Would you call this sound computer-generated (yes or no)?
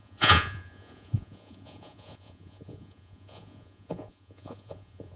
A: yes